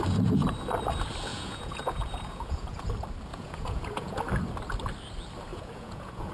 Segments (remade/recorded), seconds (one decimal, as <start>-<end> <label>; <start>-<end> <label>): 0.0-1.3 recorded; 1.3-2.9 remade; 2.9-3.3 recorded; 3.3-4.2 remade; 4.2-5.5 recorded; 5.5-6.3 remade